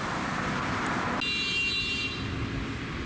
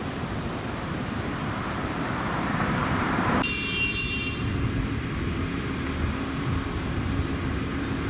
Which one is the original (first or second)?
first